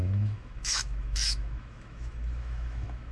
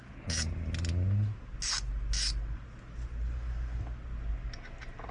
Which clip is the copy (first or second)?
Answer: first